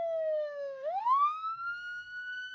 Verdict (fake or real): fake